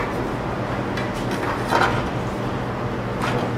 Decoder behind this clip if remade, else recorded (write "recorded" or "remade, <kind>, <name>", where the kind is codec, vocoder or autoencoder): recorded